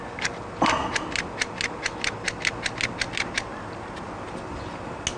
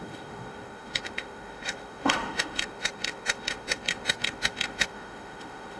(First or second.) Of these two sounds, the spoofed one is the second